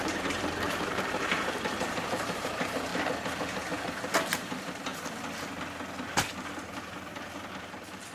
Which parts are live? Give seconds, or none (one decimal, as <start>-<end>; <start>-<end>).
2.9-4.3; 4.9-7.6